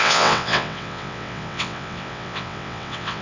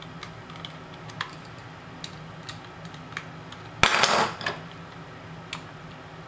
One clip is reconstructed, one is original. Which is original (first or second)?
second